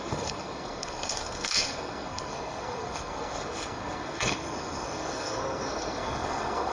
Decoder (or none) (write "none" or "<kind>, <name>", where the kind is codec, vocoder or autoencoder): codec, SNAC